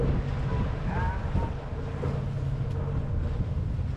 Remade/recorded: recorded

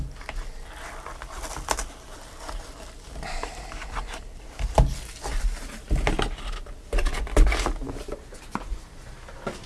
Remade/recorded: recorded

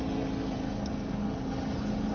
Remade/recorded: recorded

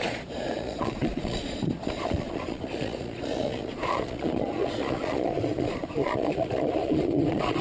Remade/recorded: remade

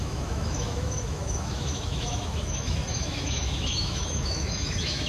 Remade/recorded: remade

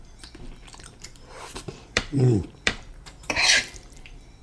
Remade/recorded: remade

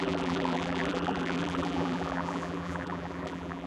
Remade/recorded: remade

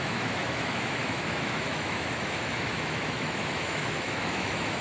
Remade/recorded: remade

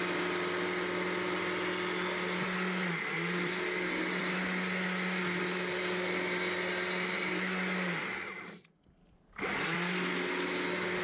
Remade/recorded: recorded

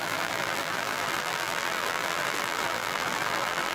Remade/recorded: remade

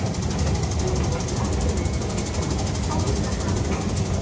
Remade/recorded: recorded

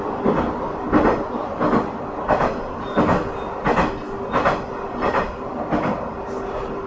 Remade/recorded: recorded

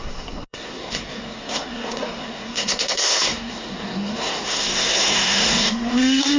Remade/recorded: remade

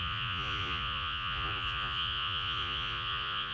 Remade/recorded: remade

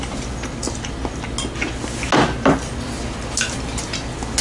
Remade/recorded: recorded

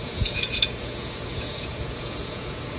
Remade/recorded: remade